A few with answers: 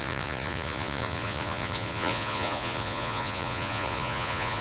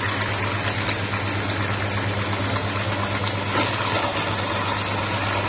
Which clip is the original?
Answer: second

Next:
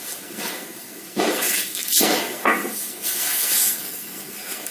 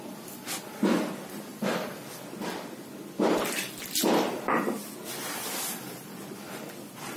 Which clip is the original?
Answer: second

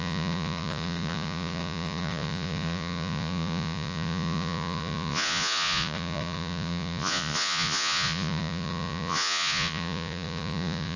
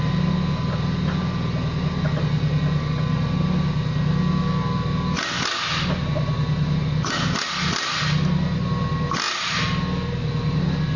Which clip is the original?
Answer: second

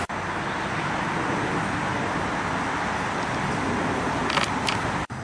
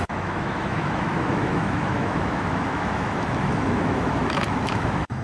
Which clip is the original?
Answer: first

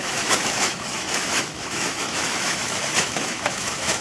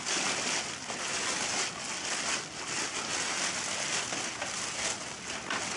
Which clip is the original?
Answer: second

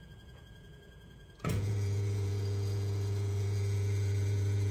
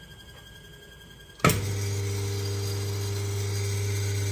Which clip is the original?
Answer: second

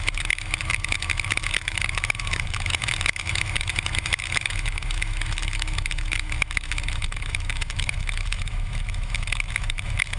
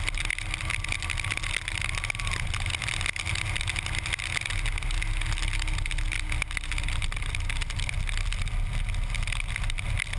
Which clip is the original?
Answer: second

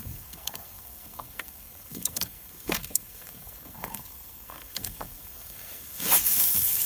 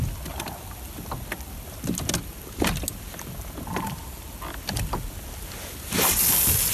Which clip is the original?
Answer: second